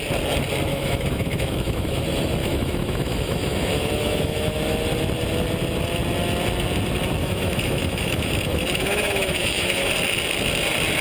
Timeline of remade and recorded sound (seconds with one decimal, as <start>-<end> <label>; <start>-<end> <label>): 0.0-0.7 recorded; 0.7-2.0 remade; 2.0-2.4 recorded; 2.4-4.6 remade; 4.6-7.2 recorded; 7.2-9.9 remade; 9.9-11.0 recorded